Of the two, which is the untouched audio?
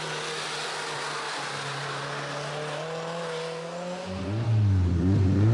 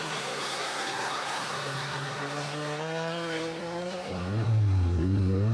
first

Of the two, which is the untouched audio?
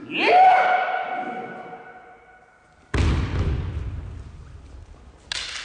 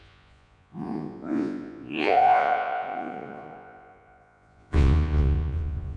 first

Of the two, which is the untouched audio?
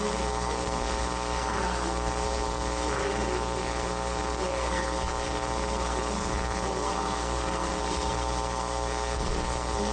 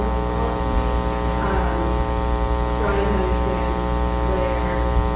second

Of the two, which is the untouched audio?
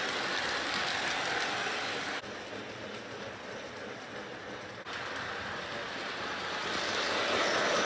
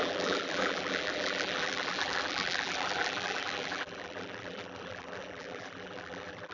first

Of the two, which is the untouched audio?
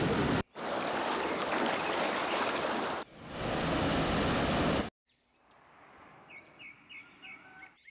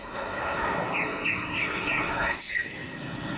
first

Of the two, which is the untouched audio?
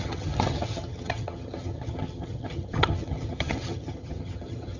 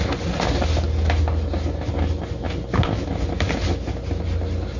second